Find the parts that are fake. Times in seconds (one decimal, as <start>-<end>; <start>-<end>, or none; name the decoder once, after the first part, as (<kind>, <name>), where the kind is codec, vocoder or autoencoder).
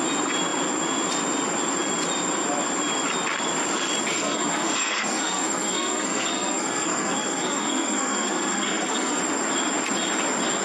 4.1-9.2 (codec, SNAC)